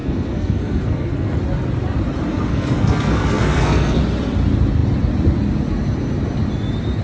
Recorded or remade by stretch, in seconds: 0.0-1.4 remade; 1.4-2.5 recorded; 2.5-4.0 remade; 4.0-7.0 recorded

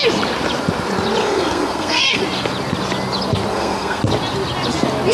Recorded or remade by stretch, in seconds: 0.0-1.2 recorded; 1.2-2.2 remade; 2.2-3.5 recorded; 3.5-4.0 remade; 4.0-5.1 recorded

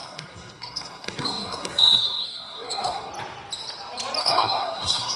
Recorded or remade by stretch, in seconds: 0.0-3.1 remade; 3.1-4.2 recorded; 4.2-5.2 remade

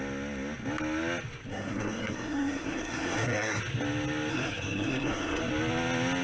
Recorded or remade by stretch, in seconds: 0.0-1.5 recorded; 1.5-3.6 remade; 3.6-4.3 recorded; 4.3-5.4 remade; 5.4-6.2 recorded

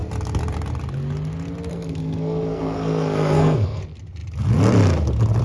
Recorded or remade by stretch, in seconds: 0.0-1.7 recorded; 1.7-3.8 remade; 3.8-5.4 recorded

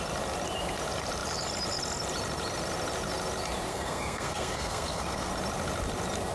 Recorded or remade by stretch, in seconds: 0.0-3.7 recorded; 3.7-5.3 remade; 5.3-6.3 recorded

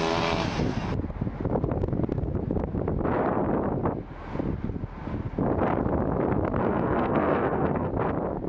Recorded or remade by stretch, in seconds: 0.0-6.6 recorded; 6.6-7.9 remade; 7.9-8.5 recorded

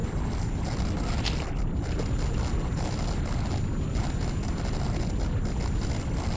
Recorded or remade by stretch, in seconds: 0.0-6.4 recorded